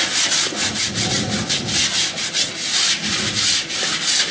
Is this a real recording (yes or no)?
yes